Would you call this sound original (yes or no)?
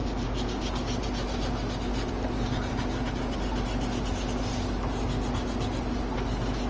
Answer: yes